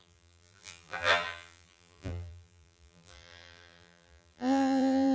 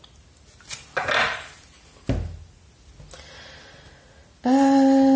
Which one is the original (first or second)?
second